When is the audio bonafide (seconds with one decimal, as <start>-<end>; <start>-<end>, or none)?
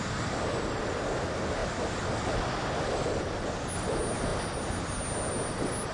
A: 0.0-5.9